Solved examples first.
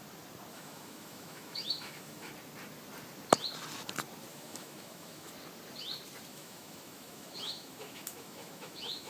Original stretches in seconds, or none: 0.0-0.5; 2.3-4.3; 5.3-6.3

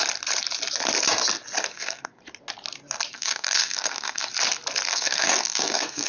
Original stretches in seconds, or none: 0.0-1.7; 2.2-3.1; 4.3-4.9

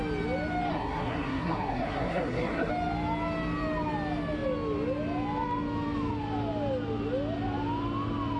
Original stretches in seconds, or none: 0.0-0.7; 2.7-8.4

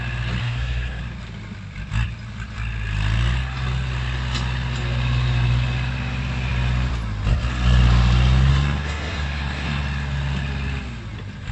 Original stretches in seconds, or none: 0.0-0.4; 1.0-8.5; 9.8-11.5